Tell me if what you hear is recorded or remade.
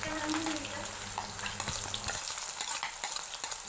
recorded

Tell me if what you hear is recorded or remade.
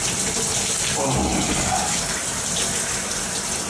recorded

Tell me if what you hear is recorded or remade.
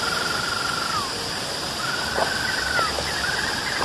recorded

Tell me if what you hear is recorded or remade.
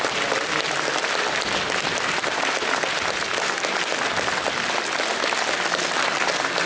recorded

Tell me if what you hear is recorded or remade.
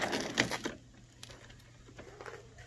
recorded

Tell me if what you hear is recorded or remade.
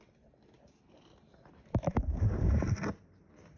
recorded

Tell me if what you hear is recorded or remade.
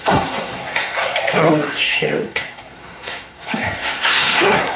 remade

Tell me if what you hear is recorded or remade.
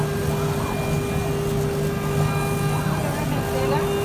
recorded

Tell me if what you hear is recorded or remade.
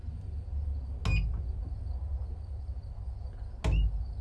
recorded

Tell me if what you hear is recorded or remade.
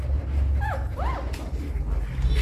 recorded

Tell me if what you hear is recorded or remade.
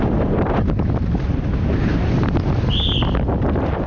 recorded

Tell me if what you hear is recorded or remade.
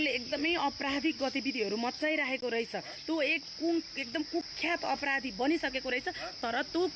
recorded